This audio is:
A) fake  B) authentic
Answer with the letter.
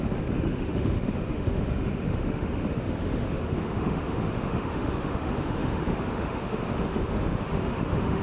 A